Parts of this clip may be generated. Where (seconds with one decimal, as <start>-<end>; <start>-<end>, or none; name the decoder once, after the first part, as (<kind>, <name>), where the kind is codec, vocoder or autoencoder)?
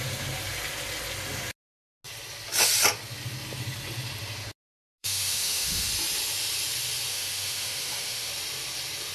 5.0-5.9 (autoencoder, DAC-VAE); 7.1-8.3